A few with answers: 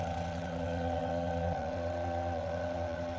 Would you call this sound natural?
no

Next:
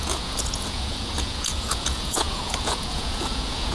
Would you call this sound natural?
no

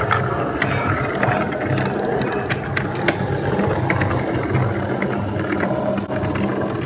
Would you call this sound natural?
yes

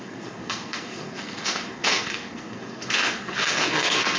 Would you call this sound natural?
no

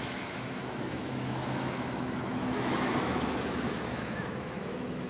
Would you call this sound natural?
no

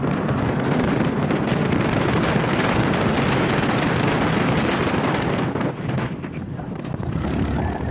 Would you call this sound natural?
yes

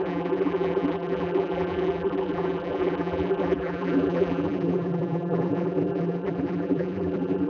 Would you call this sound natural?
no